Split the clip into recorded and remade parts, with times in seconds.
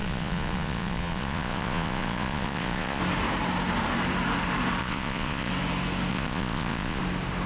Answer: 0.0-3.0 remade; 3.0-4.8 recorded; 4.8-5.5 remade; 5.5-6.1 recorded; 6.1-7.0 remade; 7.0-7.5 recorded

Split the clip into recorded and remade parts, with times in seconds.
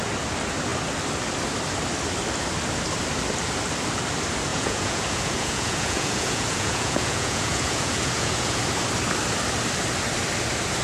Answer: 0.0-4.5 recorded; 4.5-8.6 remade; 8.6-10.8 recorded